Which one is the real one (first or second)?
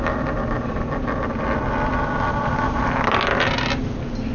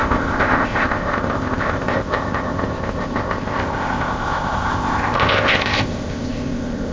first